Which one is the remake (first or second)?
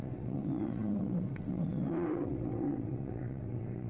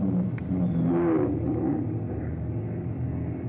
first